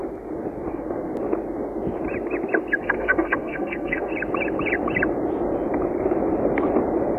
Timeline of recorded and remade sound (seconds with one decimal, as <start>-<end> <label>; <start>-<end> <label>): 0.0-0.7 recorded; 0.7-1.1 remade; 1.1-2.8 recorded; 2.8-4.1 remade; 4.1-7.2 recorded